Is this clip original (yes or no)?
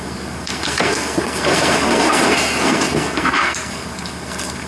no